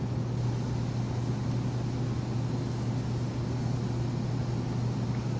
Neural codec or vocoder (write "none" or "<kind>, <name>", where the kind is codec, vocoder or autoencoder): none